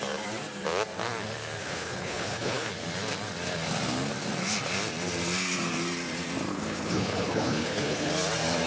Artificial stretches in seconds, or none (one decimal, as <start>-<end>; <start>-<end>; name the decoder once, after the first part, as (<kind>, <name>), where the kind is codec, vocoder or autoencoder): 1.6-2.7 (codec, HILCodec); 6.5-8.1